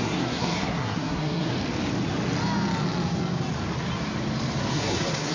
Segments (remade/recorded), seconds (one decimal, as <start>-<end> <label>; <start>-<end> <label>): 0.0-1.5 remade; 1.5-4.7 recorded; 4.7-5.3 remade